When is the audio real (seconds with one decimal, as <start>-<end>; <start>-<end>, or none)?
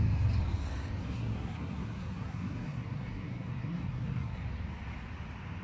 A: 0.0-1.0; 4.4-5.6